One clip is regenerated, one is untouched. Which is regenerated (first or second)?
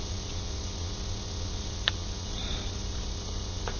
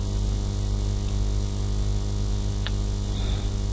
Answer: first